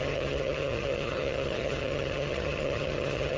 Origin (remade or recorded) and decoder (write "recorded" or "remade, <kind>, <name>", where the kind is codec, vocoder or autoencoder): remade, vocoder, HiFi-GAN